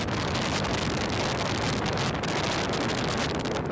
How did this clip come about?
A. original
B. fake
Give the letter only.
A